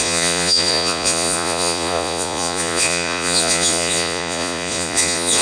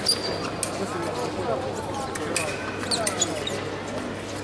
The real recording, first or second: second